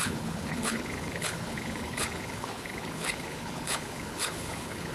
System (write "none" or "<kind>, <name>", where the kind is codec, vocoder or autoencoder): codec, HILCodec